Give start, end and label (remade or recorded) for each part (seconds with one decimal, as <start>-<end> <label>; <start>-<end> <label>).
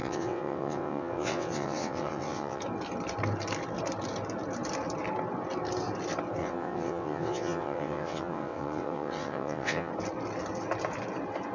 0.0-2.6 remade; 2.6-6.4 recorded; 6.4-9.9 remade; 9.9-11.5 recorded